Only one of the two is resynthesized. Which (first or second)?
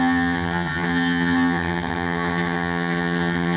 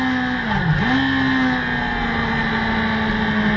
first